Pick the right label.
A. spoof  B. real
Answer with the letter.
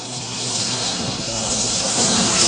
A